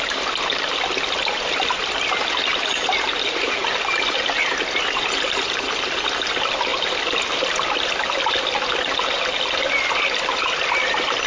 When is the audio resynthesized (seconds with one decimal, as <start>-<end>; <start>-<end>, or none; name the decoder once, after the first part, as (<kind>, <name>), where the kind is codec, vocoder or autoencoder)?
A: none